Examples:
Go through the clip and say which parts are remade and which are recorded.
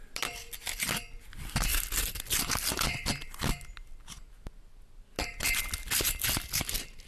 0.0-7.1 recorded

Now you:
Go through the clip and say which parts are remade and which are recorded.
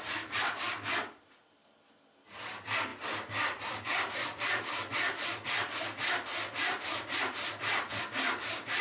0.0-2.9 recorded; 2.9-8.0 remade; 8.0-8.8 recorded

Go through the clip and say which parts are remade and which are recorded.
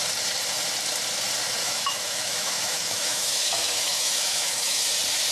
0.0-1.6 recorded; 1.6-4.8 remade; 4.8-5.3 recorded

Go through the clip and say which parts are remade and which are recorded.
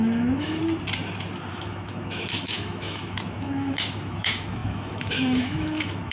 0.0-0.6 remade; 0.6-1.5 recorded; 1.5-6.1 remade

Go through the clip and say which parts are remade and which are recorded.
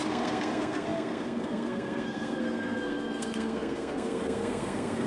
0.0-5.1 remade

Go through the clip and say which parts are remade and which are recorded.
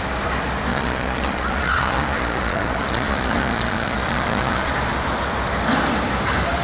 0.0-0.7 recorded; 0.7-4.7 remade; 4.7-6.6 recorded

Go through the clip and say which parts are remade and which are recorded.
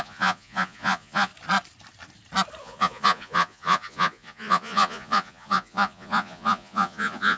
0.0-1.3 remade; 1.3-2.6 recorded; 2.6-7.4 remade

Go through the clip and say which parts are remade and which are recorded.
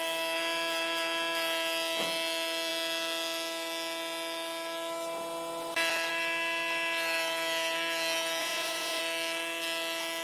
0.0-8.4 recorded; 8.4-9.0 remade; 9.0-10.2 recorded